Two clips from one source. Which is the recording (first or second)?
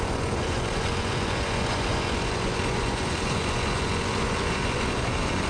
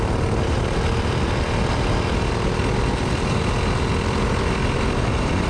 second